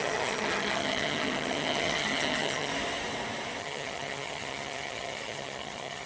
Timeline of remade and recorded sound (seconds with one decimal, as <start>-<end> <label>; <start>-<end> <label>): 0.0-2.7 remade; 2.7-3.6 recorded; 3.6-6.1 remade